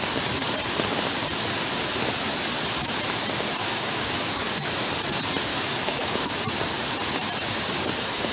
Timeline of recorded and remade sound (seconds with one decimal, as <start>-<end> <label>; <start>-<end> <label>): 0.0-3.6 recorded; 3.6-4.7 remade; 4.7-5.5 recorded; 5.5-6.3 remade; 6.3-8.3 recorded